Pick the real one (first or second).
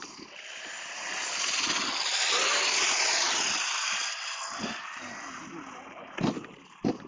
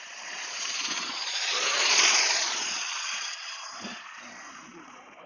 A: first